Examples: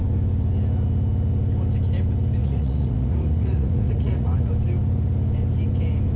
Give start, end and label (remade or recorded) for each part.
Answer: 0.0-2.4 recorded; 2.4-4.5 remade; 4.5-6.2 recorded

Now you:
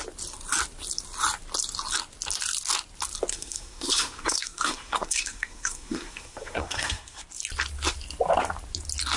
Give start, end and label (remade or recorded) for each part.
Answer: 0.0-3.3 recorded; 3.3-7.2 remade; 7.2-9.2 recorded

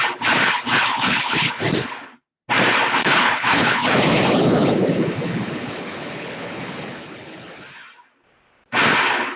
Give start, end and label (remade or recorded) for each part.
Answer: 0.0-0.9 recorded; 0.9-1.5 remade; 1.5-3.0 recorded; 3.0-7.5 remade; 7.5-9.4 recorded